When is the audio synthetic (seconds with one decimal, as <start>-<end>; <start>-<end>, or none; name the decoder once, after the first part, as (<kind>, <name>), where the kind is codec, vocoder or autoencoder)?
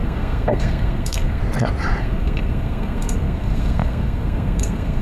0.0-1.4 (codec, SNAC); 2.0-5.0